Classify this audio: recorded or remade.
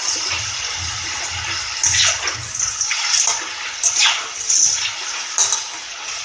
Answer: recorded